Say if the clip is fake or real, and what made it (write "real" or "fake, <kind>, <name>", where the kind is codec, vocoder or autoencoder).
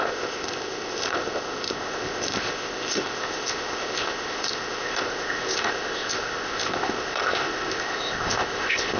fake, codec, ZipCodec